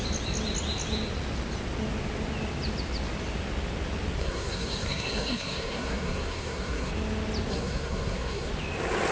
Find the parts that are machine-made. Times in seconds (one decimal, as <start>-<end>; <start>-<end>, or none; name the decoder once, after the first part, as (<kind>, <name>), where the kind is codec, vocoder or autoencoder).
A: 4.2-6.9 (codec, SNAC); 7.5-8.5